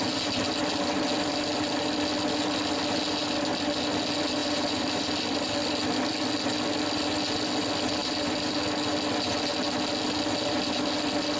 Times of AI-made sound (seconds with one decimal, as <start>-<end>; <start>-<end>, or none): 4.4-5.5; 8.0-8.5